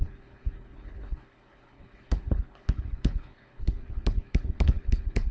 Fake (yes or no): yes